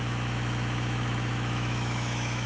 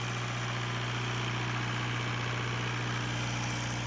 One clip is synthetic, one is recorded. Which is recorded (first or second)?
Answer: second